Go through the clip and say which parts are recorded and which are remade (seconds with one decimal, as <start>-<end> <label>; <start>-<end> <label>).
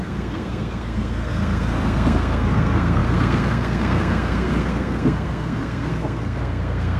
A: 0.0-7.0 remade